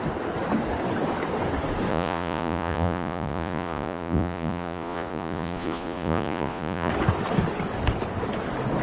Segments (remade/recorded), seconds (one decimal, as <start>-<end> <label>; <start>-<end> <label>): 0.0-1.9 recorded; 1.9-6.9 remade; 6.9-8.8 recorded